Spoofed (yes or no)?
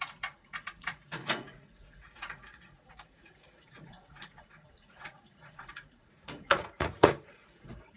yes